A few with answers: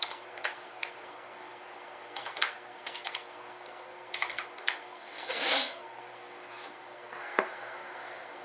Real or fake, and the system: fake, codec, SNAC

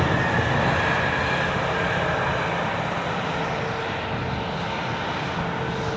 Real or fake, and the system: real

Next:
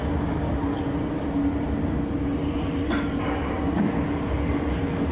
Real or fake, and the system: real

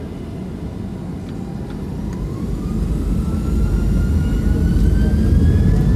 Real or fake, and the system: real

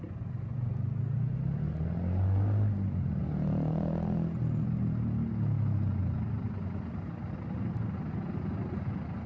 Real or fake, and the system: real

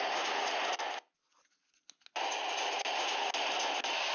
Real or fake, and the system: real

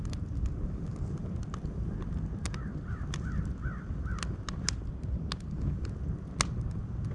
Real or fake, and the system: real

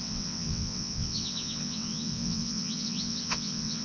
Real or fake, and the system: fake, vocoder, WaveNeXt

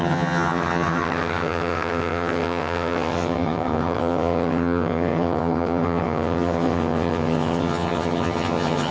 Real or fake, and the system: fake, vocoder, HiFi-GAN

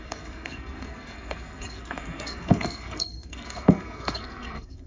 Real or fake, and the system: fake, codec, SNAC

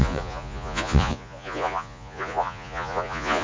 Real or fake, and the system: fake, vocoder, Vocos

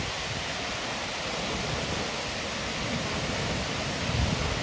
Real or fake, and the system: real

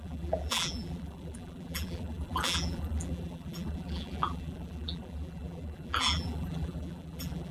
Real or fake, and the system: fake, vocoder, BigVGAN v2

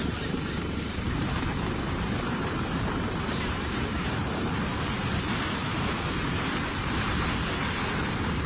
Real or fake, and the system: fake, vocoder, BigVGAN v2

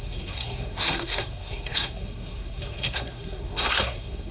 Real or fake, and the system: fake, codec, SNAC